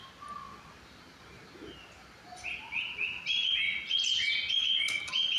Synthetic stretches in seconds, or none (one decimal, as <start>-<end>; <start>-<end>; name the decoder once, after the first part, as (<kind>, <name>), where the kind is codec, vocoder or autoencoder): none